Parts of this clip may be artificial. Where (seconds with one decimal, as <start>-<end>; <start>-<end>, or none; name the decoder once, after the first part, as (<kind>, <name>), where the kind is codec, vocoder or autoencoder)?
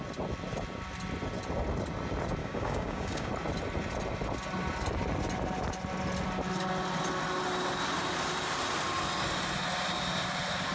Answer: 2.4-3.3 (codec, DAC)